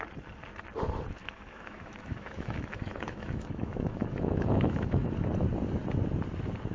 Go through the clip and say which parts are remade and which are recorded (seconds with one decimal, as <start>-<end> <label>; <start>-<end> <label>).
0.0-1.2 recorded; 1.2-5.1 remade; 5.1-6.7 recorded